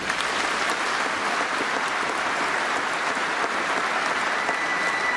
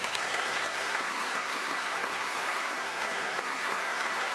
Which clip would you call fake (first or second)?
second